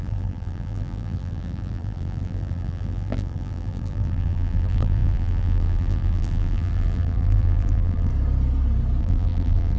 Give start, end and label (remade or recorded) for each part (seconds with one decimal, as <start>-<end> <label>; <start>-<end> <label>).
0.0-8.1 remade; 8.1-9.0 recorded; 9.0-9.8 remade